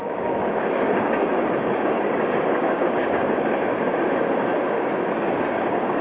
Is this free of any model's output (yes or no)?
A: no